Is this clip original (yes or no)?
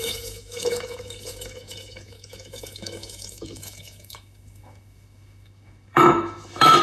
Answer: no